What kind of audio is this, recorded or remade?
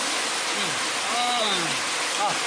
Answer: recorded